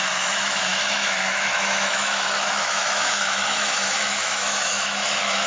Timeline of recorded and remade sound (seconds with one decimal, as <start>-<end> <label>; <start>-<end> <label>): 0.0-5.5 remade